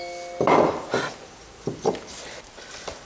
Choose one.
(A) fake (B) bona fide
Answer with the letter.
B